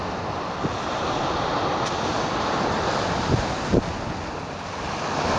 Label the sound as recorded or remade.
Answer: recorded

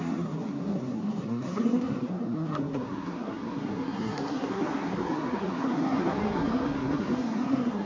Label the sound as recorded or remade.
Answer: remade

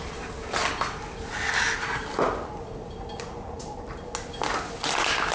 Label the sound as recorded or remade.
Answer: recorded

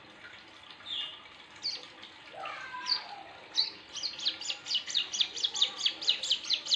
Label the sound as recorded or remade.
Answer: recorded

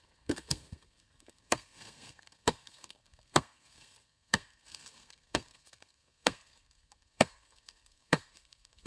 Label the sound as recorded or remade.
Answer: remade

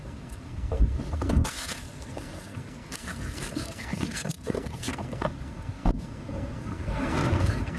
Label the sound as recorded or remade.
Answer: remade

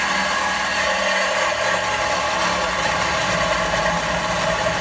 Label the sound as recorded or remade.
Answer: recorded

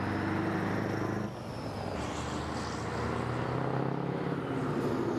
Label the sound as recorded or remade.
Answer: recorded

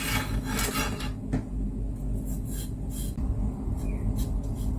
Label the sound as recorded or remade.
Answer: recorded